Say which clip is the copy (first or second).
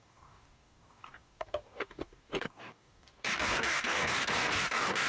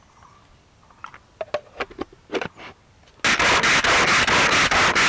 first